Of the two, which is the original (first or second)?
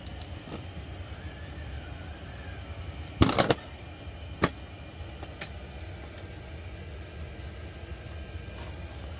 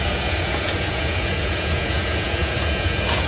first